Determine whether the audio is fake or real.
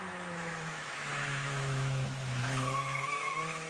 fake